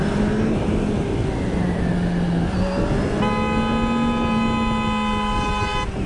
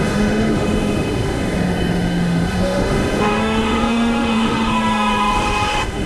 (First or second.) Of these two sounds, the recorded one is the first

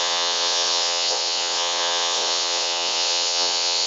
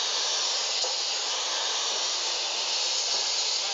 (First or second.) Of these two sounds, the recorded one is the second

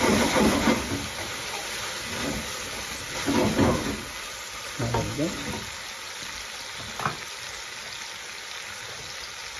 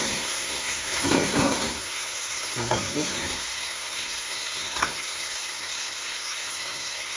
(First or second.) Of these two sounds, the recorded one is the first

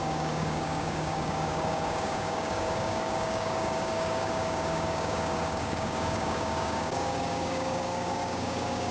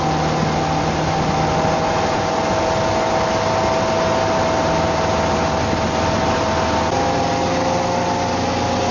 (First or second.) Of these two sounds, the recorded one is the second